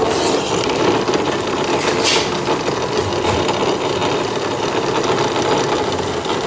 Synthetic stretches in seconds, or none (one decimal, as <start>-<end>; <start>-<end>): none